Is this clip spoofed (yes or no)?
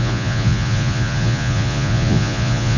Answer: yes